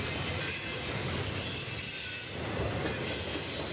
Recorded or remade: recorded